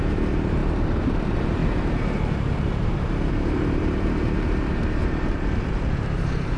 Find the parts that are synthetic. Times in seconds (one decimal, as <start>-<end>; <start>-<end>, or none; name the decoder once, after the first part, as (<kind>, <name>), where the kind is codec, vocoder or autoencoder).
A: 0.0-0.6 (vocoder, BigVGAN v2); 1.1-6.6